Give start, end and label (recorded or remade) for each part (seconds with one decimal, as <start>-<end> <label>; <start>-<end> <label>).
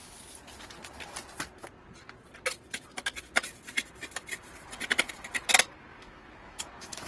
0.0-5.9 recorded; 5.9-7.1 remade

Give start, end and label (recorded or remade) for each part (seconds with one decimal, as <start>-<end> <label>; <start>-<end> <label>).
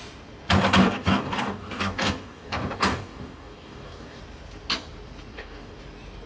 0.0-0.8 recorded; 0.8-4.2 remade; 4.2-5.3 recorded; 5.3-5.8 remade; 5.8-6.3 recorded